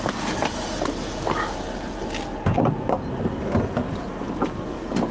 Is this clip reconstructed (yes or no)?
no